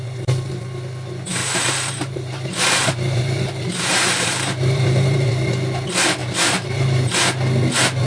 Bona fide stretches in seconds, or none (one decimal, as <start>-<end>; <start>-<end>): 0.0-1.4; 5.5-6.2; 7.2-8.1